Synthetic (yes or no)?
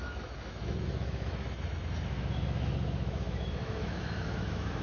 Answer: yes